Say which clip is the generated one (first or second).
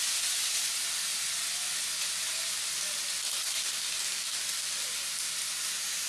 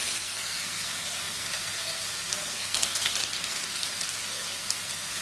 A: second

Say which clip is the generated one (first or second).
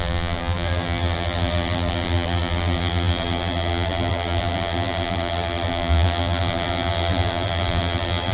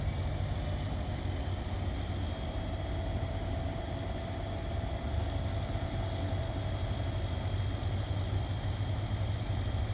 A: first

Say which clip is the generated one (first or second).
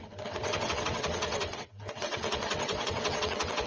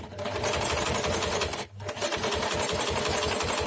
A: first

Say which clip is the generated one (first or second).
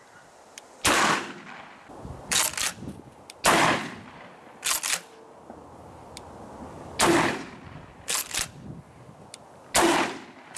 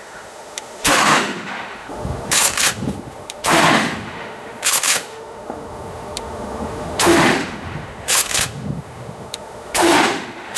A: second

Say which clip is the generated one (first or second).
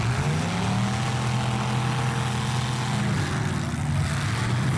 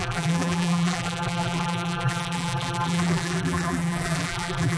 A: second